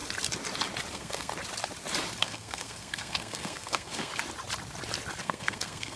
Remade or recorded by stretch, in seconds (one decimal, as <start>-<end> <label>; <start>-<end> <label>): 0.0-0.9 recorded; 0.9-1.3 remade; 1.3-2.2 recorded; 2.2-4.1 remade; 4.1-5.2 recorded; 5.2-6.0 remade